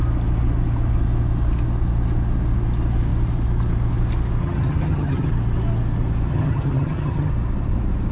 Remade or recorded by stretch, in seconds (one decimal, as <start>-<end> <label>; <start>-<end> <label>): 0.0-4.4 recorded; 4.4-5.3 remade; 5.3-6.3 recorded; 6.3-7.3 remade; 7.3-8.1 recorded

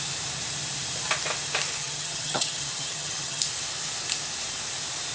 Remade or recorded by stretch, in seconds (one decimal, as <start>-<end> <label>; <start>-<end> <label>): 0.0-1.8 recorded; 1.8-3.4 remade; 3.4-5.1 recorded

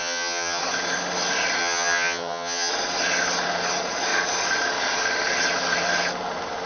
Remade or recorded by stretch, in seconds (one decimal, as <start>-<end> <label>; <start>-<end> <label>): 0.0-0.6 remade; 0.6-1.6 recorded; 1.6-2.7 remade; 2.7-6.7 recorded

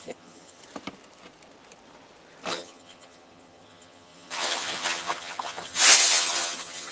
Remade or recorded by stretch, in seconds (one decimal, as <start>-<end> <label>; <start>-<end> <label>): 0.0-0.6 remade; 0.6-2.5 recorded; 2.5-6.9 remade

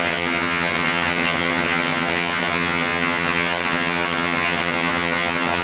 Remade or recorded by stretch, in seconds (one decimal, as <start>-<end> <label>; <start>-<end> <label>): 0.0-5.6 remade

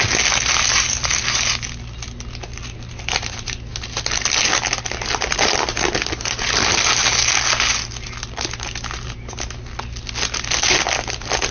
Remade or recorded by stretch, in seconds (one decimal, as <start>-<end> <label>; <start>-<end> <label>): 0.0-11.5 recorded

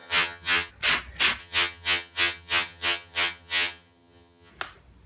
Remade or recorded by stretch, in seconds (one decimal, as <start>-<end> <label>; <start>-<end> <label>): 0.0-0.7 remade; 0.7-1.4 recorded; 1.4-4.5 remade; 4.5-5.1 recorded